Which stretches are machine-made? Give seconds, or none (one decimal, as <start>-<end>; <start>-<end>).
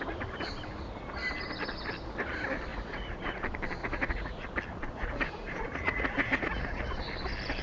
2.7-3.4; 3.8-4.5; 4.9-6.8